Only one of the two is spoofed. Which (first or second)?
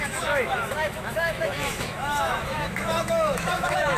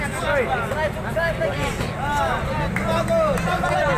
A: first